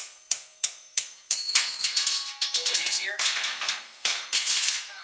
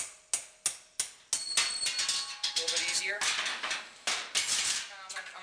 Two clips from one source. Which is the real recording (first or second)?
second